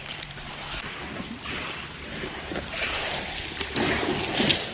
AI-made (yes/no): no